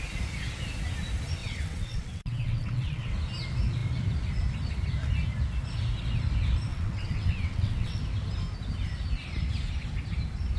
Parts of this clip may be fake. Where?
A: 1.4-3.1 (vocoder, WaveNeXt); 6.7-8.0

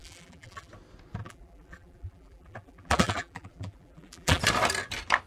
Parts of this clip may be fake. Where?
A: 0.0-0.7 (vocoder, BigVGAN v2); 1.2-4.4

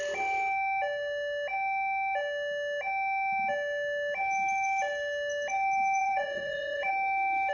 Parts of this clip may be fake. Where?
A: 6.0-6.9 (vocoder, Vocos)

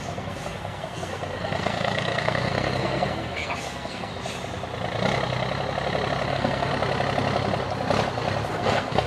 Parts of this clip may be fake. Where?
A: 0.0-4.1 (codec, SNAC); 6.3-6.7; 8.5-9.1

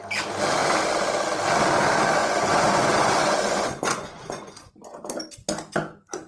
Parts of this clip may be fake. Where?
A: 2.2-4.7 (vocoder, Vocos)

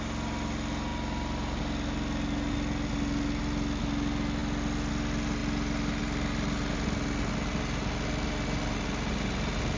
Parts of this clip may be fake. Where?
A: none

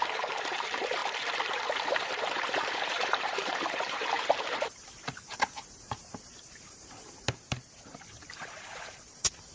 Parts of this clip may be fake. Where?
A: 0.0-1.0 (vocoder, BigVGAN v2); 2.0-9.5

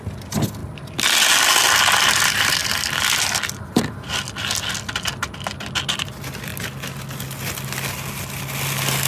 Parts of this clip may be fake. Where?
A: none